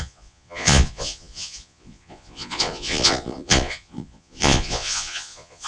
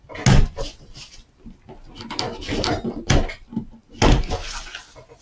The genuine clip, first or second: second